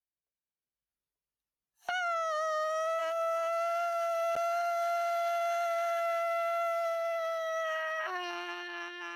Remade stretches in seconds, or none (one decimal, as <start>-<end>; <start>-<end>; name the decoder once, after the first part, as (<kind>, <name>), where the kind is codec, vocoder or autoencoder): 0.0-0.9 (autoencoder, DAC-VAE); 1.9-9.2